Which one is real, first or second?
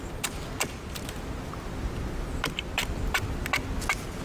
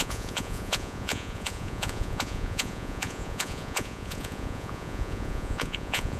first